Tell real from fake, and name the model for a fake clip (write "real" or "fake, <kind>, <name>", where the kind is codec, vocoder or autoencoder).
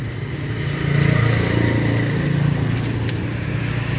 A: real